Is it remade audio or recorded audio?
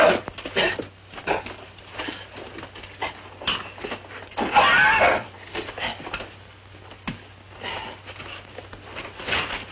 recorded